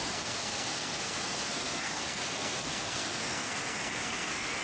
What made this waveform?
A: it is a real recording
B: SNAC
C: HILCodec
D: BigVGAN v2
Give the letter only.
B